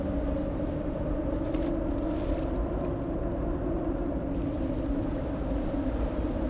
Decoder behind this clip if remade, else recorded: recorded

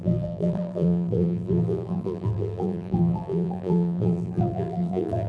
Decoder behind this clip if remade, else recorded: remade, vocoder, BigVGAN v2